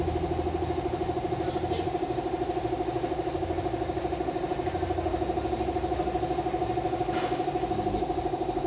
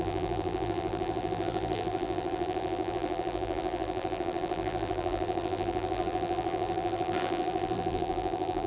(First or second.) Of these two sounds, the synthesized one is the second